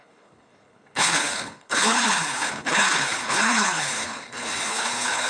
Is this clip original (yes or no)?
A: no